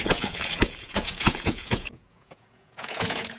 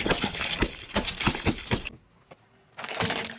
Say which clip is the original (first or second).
second